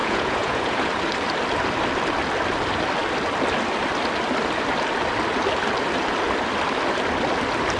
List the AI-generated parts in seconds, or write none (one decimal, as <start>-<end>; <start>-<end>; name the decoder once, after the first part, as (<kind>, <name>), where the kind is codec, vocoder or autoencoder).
0.0-0.9 (vocoder, Vocos)